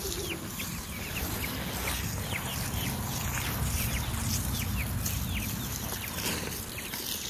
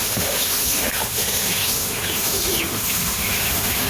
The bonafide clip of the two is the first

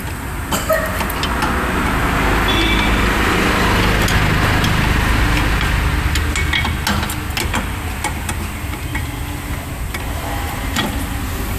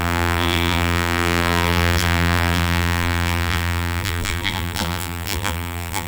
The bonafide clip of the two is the first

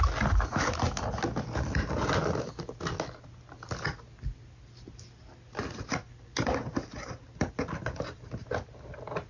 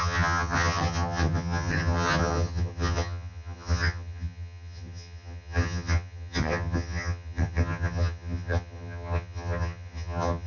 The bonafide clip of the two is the first